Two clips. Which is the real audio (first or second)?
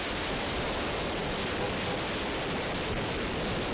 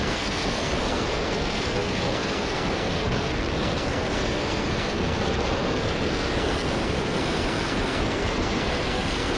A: first